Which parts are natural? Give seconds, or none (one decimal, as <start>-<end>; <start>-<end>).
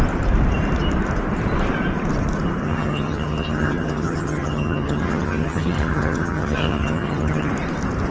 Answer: 0.0-2.6; 7.5-8.1